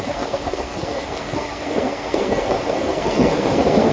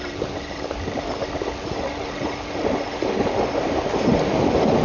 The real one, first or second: second